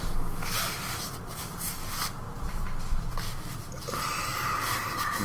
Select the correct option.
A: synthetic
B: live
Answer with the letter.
B